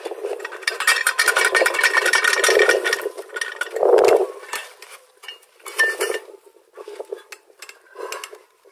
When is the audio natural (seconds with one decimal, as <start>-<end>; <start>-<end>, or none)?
0.0-0.9; 2.2-8.7